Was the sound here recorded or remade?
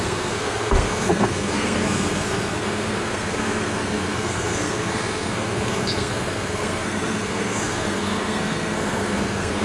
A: remade